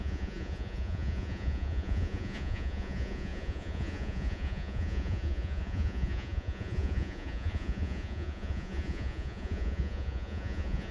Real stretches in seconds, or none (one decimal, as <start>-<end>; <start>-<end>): none